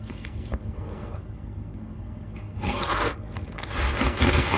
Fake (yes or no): yes